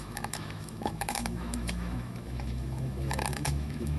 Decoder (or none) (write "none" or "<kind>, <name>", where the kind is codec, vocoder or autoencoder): autoencoder, DAC-VAE